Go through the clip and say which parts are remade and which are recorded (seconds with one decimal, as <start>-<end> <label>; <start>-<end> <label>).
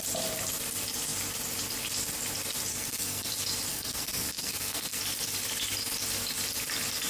0.0-2.7 recorded; 2.7-3.3 remade; 3.3-3.7 recorded; 3.7-5.0 remade; 5.0-7.1 recorded